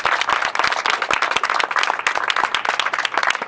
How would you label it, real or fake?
real